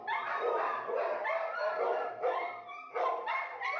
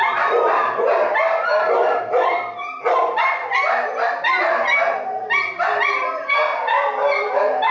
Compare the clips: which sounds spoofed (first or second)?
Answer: first